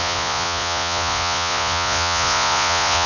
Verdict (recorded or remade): remade